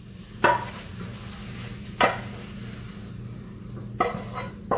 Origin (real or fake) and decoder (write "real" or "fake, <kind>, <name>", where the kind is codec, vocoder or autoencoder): real